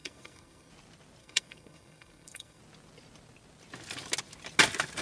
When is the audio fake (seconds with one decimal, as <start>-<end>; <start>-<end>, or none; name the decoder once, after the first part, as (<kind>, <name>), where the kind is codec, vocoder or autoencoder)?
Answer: 0.0-0.7 (codec, SNAC); 1.2-2.6